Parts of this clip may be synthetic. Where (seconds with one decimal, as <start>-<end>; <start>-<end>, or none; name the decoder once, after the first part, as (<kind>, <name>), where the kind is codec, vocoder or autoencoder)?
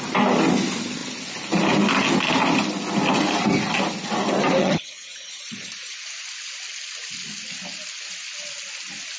4.6-5.4 (vocoder, HiFi-GAN)